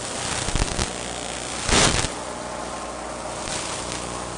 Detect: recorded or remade recorded